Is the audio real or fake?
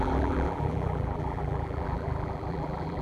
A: fake